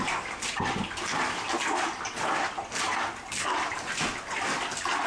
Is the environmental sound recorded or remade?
recorded